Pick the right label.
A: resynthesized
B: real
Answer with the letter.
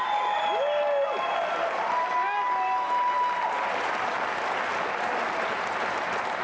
B